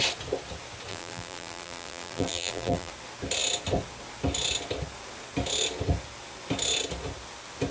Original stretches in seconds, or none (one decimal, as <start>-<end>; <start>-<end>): 0.0-0.9; 2.9-7.7